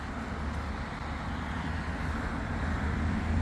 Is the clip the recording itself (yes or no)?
yes